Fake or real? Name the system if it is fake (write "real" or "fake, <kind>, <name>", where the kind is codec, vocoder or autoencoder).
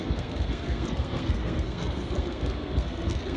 fake, codec, SNAC